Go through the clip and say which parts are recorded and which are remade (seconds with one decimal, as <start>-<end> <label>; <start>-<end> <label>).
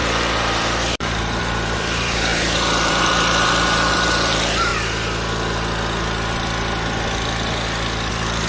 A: 0.0-4.7 remade; 4.7-8.1 recorded; 8.1-8.5 remade